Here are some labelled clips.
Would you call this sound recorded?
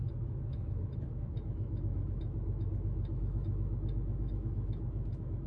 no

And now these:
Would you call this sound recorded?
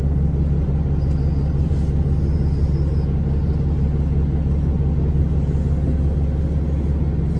yes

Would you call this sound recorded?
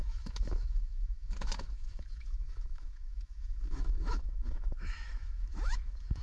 no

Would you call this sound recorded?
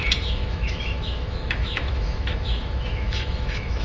no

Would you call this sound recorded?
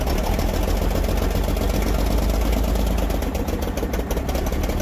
yes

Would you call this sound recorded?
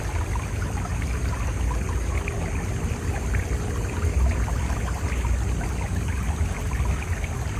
yes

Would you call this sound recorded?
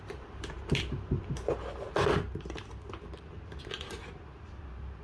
yes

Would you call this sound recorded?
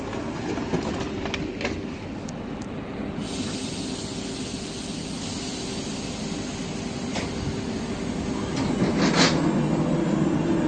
yes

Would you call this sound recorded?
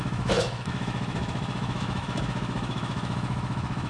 no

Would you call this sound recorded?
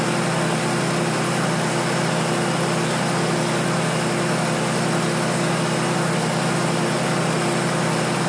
yes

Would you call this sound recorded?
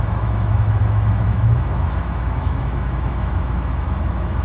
no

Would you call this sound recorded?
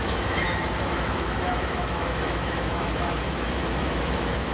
no